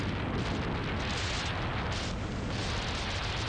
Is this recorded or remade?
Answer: recorded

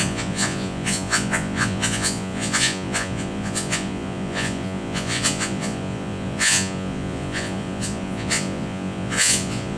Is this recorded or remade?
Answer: remade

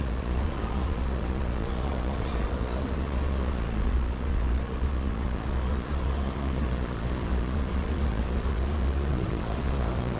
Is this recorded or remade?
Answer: remade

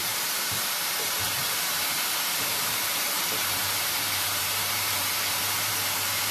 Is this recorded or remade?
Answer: remade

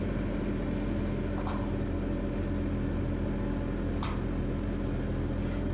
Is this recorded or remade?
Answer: recorded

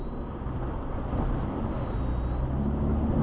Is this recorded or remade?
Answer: recorded